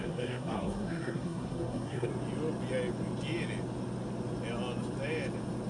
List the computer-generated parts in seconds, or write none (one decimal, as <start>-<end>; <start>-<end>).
0.0-2.1